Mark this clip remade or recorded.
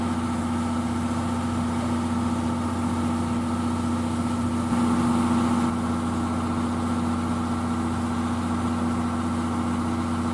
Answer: recorded